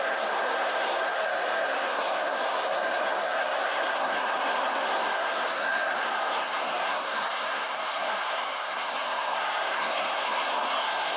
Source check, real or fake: fake